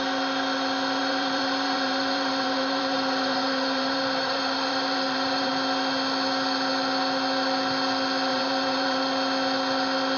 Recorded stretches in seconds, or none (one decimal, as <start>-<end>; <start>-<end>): 0.0-1.0; 5.5-8.3; 9.0-10.2